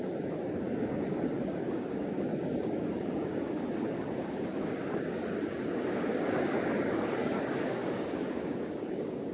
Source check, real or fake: fake